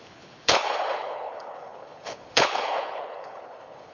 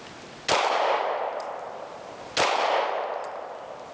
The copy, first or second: first